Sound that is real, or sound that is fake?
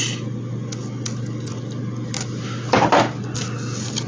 real